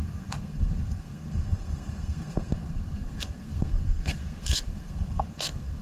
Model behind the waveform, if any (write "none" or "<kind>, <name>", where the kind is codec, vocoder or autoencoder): codec, SNAC